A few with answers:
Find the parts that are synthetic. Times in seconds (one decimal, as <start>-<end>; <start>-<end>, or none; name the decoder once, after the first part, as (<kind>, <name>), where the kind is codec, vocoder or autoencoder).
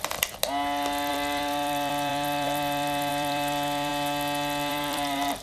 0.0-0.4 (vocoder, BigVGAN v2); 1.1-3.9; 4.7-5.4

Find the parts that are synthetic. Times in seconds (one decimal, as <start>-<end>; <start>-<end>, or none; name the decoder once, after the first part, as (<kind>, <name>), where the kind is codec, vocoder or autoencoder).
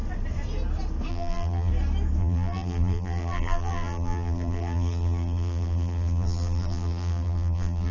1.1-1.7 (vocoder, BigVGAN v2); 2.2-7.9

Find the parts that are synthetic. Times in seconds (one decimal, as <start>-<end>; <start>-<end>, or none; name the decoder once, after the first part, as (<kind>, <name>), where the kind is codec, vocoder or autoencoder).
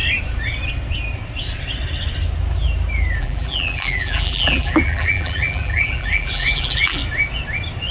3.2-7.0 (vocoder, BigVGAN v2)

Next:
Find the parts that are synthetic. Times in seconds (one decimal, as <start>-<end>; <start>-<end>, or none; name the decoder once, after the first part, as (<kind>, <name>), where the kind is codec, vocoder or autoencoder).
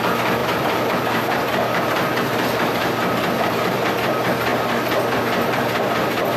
0.4-3.9 (vocoder, BigVGAN v2)